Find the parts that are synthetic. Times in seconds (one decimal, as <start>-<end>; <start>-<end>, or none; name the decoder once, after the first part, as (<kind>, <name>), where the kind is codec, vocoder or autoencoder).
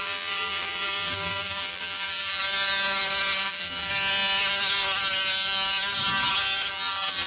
0.0-2.4 (vocoder, BigVGAN v2); 3.5-3.9; 6.7-7.3